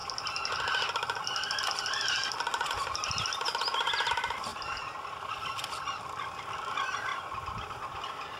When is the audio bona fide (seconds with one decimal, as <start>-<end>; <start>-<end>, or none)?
0.0-4.5; 6.4-8.4